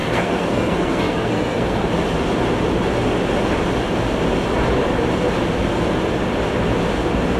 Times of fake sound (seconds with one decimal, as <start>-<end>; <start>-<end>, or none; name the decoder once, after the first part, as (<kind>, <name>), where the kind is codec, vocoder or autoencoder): 0.0-1.9 (codec, SNAC)